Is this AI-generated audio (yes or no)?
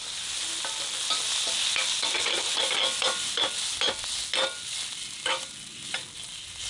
no